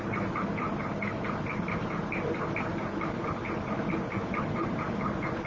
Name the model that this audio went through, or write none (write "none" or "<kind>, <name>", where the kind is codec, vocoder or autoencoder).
none